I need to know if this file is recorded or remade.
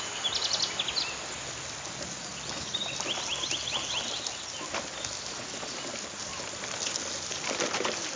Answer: recorded